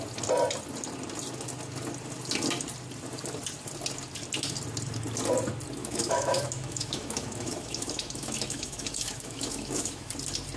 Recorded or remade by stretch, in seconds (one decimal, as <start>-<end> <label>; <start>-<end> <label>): 0.0-5.8 recorded; 5.8-10.1 remade; 10.1-10.6 recorded